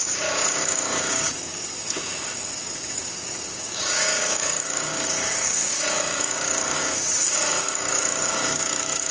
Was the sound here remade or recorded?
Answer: remade